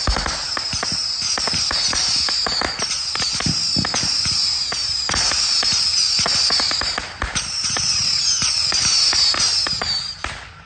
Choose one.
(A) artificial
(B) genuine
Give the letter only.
B